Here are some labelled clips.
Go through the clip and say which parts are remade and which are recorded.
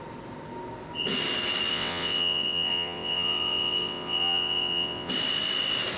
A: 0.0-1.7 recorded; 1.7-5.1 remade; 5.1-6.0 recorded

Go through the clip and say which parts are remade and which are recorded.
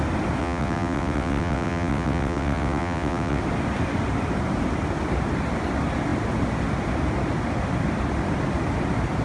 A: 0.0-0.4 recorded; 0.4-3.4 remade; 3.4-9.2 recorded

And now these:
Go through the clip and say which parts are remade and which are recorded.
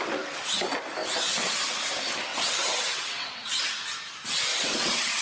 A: 0.0-2.3 recorded; 2.3-3.6 remade; 3.6-4.5 recorded; 4.5-5.2 remade